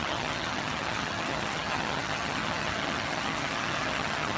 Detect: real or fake fake